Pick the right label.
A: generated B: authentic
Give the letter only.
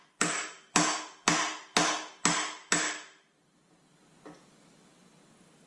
B